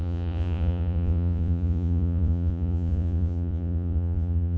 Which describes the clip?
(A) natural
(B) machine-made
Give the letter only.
B